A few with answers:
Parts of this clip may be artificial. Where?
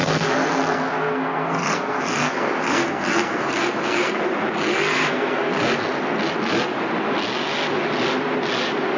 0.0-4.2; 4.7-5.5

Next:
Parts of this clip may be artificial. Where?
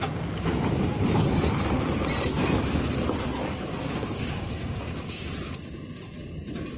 3.7-5.3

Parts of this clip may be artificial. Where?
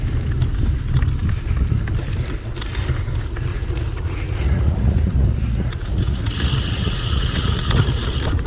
3.5-8.5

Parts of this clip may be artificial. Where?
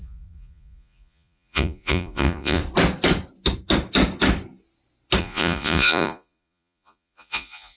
0.0-2.6; 5.2-7.8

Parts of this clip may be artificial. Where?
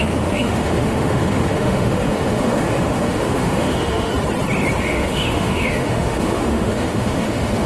0.0-4.1; 4.8-7.7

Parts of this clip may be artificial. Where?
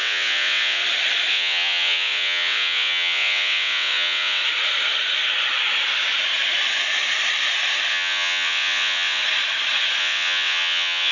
0.0-0.8; 1.3-4.4; 7.9-9.2; 10.0-11.1